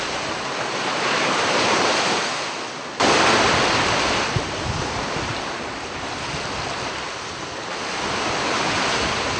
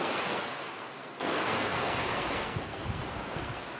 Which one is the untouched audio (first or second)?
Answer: first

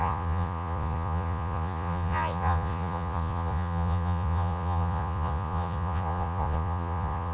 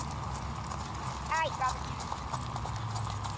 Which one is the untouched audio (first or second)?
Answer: second